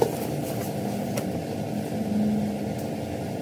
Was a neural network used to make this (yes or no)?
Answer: no